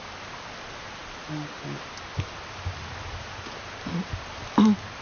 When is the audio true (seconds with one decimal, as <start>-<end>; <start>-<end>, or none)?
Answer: 0.0-5.0